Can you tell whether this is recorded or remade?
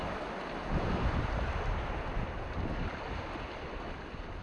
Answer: recorded